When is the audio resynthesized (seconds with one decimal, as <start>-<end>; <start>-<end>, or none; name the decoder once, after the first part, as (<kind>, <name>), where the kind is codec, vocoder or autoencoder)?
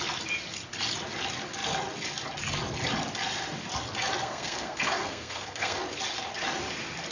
4.2-5.8 (codec, SNAC)